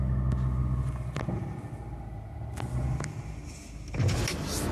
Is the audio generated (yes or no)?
no